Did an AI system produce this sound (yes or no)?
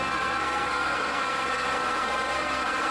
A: yes